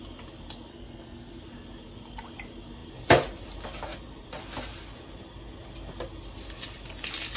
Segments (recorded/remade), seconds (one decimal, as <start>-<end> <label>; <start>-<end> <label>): 0.0-0.7 recorded; 0.7-1.4 remade; 1.4-7.4 recorded